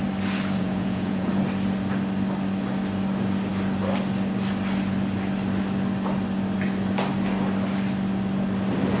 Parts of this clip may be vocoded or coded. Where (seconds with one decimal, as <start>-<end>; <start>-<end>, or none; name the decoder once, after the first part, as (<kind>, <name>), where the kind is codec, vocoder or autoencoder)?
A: 0.6-1.3 (vocoder, Vocos)